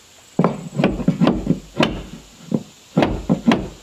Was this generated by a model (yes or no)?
no